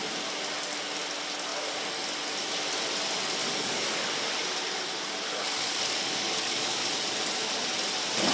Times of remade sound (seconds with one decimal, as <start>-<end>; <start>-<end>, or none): 3.4-4.1; 5.3-6.9